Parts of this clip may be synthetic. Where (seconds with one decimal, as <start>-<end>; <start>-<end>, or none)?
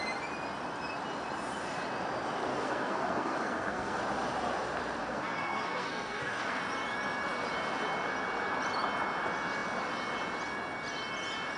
2.5-4.0; 5.0-6.6